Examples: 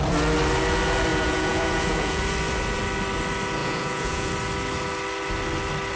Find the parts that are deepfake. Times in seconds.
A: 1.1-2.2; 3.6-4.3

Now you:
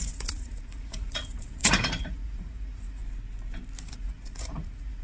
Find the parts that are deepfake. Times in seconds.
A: 0.0-3.0; 3.8-5.0

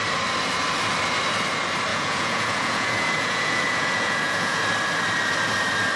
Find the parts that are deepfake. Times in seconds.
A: 1.9-4.6

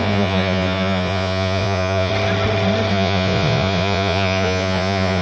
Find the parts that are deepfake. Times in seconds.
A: 0.0-2.1; 2.9-5.2

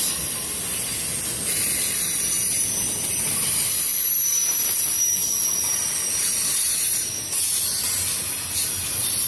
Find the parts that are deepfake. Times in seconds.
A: none